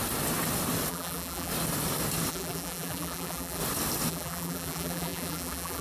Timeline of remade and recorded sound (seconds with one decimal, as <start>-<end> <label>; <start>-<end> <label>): 0.0-0.9 recorded; 0.9-1.5 remade; 1.5-2.3 recorded; 2.3-3.6 remade; 3.6-4.1 recorded; 4.1-5.8 remade